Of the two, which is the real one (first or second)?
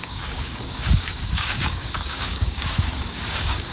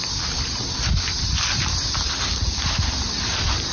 second